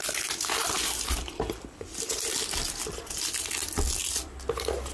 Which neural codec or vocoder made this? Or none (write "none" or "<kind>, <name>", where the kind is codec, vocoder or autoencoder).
none